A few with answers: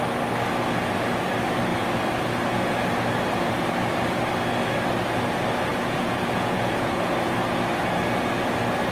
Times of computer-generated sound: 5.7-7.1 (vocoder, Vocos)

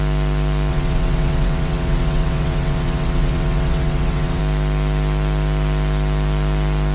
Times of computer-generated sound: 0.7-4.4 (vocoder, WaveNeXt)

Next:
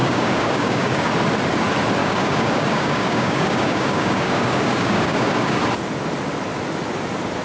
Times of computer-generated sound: 0.0-1.1 (codec, DAC); 2.0-5.6

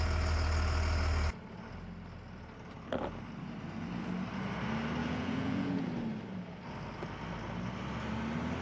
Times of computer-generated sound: 5.0-5.9 (vocoder, Vocos)